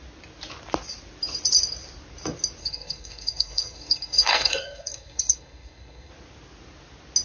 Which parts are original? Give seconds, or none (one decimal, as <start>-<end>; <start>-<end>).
0.0-2.6; 6.1-7.2